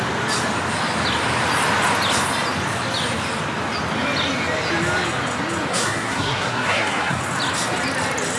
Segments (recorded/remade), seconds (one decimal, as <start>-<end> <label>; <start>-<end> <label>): 0.0-5.7 recorded; 5.7-7.2 remade; 7.2-8.4 recorded